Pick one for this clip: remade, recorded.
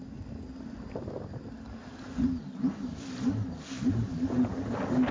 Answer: recorded